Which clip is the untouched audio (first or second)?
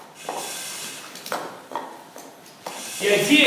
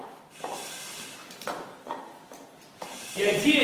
first